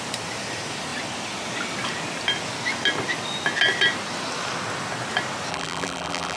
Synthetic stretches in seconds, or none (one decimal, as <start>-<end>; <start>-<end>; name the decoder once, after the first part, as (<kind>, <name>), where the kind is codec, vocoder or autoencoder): 5.5-6.4 (vocoder, BigVGAN v2)

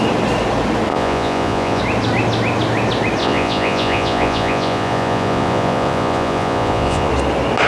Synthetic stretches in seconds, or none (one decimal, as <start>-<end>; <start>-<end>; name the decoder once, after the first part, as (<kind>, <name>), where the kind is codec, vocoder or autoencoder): 0.9-1.8 (vocoder, Vocos); 3.2-7.1

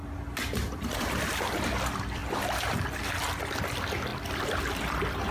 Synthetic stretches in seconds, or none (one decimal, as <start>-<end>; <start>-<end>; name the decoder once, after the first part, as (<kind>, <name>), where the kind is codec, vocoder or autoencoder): 1.3-2.2 (vocoder, BigVGAN v2); 3.6-5.3

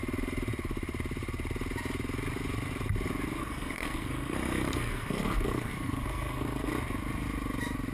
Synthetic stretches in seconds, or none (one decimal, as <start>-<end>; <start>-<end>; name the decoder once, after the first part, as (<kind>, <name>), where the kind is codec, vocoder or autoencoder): 3.4-6.7 (codec, SNAC)

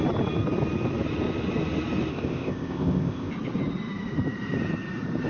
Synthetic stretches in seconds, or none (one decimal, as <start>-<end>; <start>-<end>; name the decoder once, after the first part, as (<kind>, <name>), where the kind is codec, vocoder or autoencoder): 2.1-3.3 (codec, ZipCodec)

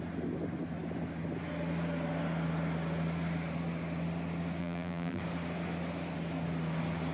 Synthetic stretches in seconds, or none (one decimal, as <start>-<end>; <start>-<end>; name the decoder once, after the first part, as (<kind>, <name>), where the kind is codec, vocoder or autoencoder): 4.6-5.2 (vocoder, BigVGAN v2)

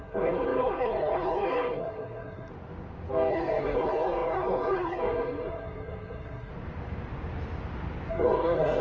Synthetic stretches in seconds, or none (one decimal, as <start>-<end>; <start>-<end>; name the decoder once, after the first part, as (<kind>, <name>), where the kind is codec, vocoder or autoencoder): 0.0-2.5 (codec, SNAC); 3.3-6.5; 8.1-8.8

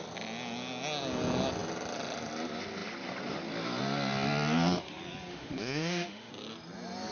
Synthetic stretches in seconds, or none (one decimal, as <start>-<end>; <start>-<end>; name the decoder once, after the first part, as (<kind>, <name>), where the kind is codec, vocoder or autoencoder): 5.3-6.3 (autoencoder, DAC-VAE)